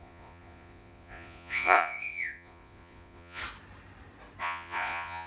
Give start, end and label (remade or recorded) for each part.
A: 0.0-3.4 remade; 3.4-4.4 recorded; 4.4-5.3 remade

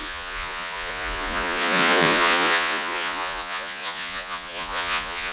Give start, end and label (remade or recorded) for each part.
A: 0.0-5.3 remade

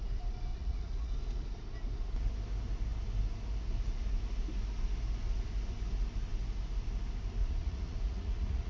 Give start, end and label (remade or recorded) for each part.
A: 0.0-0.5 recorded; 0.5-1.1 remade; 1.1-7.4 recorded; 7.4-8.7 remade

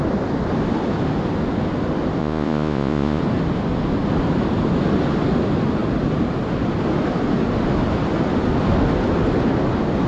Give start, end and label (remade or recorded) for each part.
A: 0.0-2.2 recorded; 2.2-3.2 remade; 3.2-10.1 recorded